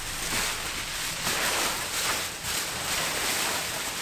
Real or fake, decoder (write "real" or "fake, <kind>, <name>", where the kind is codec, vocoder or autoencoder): fake, vocoder, BigVGAN v2